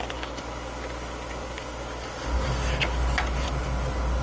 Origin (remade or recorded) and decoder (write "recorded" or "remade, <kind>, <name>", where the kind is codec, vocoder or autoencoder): recorded